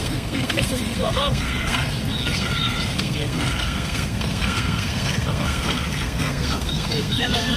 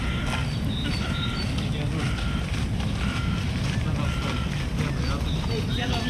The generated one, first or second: first